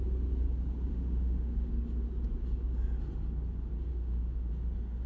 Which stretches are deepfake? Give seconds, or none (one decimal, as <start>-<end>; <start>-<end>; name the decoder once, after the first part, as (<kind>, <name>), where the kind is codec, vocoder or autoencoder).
0.9-1.7 (autoencoder, DAC-VAE); 3.9-4.5